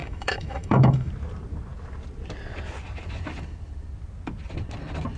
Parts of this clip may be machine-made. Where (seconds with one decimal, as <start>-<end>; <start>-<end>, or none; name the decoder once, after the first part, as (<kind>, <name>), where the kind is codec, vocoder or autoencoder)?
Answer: 0.0-1.1 (autoencoder, DAC-VAE)